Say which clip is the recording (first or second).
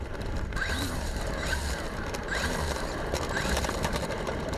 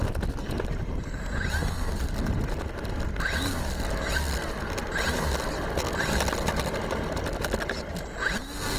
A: second